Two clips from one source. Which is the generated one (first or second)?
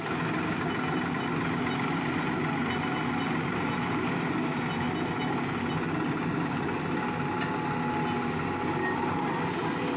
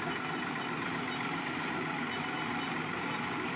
second